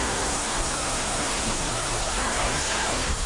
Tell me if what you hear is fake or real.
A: fake